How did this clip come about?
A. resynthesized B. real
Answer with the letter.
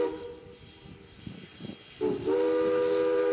B